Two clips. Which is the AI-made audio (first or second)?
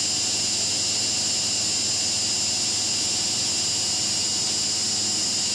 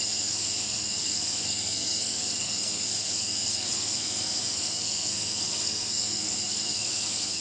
second